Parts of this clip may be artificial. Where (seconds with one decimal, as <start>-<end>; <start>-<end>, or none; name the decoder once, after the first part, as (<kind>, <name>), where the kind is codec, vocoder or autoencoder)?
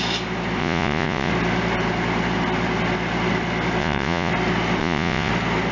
0.6-1.3 (vocoder, Vocos); 3.8-4.3; 4.8-5.3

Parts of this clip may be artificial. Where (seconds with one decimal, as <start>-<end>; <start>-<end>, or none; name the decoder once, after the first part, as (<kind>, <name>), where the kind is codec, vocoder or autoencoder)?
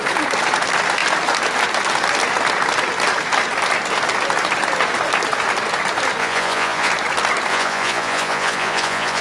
6.2-6.9 (vocoder, Vocos); 7.5-9.2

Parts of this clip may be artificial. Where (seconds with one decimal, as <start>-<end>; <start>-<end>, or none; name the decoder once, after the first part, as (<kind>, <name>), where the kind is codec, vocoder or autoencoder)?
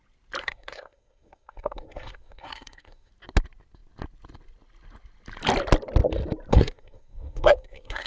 0.4-3.1 (codec, SNAC); 6.5-8.1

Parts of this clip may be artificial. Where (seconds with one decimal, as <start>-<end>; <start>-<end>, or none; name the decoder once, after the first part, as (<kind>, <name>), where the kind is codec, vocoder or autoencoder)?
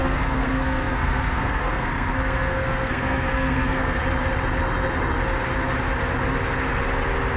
0.0-4.0 (codec, SNAC)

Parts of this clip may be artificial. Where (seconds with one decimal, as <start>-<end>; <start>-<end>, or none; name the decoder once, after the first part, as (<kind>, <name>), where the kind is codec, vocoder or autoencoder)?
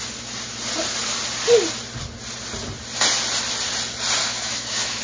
4.2-5.0 (autoencoder, DAC-VAE)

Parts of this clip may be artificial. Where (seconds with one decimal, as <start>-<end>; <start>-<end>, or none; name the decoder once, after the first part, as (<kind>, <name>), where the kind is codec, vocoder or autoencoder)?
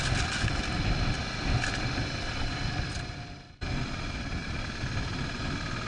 none